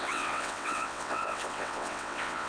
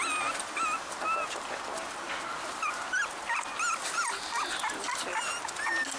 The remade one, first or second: first